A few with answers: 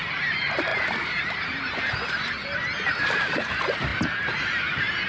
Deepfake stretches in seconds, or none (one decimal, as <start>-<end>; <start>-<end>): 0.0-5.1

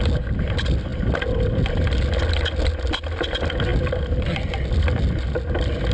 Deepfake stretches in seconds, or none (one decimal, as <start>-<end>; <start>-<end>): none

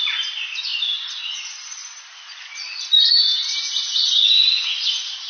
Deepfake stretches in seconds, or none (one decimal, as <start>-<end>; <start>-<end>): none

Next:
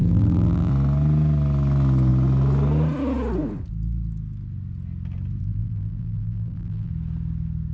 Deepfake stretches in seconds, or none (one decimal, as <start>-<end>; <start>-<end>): 0.0-0.7; 5.4-6.9